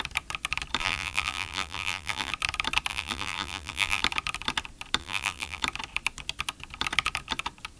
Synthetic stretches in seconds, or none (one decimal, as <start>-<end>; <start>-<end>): 0.8-2.3; 2.9-4.0; 5.0-5.6